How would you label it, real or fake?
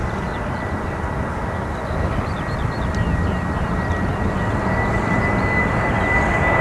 real